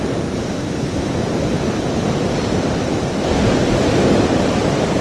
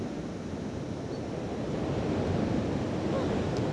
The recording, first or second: second